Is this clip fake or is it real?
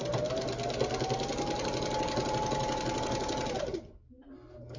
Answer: real